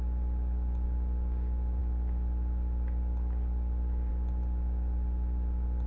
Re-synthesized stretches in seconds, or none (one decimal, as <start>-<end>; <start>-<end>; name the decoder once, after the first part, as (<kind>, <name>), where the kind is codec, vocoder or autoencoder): none

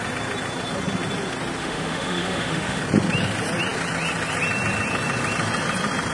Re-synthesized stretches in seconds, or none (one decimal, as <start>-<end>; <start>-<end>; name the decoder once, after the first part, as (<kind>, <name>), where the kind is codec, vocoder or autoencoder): 1.6-2.8 (autoencoder, DAC-VAE)

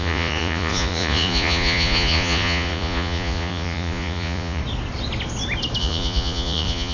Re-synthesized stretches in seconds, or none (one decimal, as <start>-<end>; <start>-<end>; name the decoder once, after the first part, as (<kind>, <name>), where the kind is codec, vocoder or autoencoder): 0.0-4.6 (vocoder, Vocos); 5.8-6.9

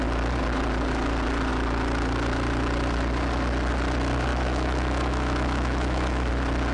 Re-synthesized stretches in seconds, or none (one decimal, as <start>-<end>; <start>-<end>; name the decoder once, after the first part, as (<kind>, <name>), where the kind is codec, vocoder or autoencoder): 4.3-6.3 (autoencoder, DAC-VAE)

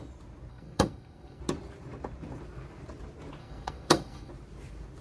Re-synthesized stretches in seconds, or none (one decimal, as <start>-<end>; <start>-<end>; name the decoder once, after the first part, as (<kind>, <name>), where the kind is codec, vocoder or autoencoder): 0.5-1.4 (codec, SNAC); 3.4-4.3

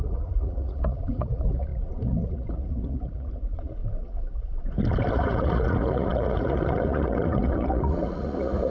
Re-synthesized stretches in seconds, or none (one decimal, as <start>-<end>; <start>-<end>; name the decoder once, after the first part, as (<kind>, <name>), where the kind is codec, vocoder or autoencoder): 0.0-3.8 (vocoder, Vocos); 5.1-8.7

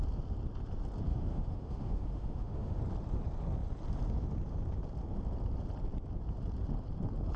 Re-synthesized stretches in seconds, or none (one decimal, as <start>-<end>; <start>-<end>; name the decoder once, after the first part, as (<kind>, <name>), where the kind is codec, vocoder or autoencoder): 1.1-2.8 (autoencoder, DAC-VAE)